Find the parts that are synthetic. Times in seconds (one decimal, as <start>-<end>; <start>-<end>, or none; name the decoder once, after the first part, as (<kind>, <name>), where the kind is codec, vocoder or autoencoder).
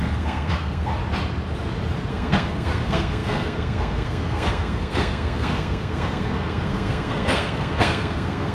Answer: 0.0-1.0 (codec, SNAC); 2.1-8.5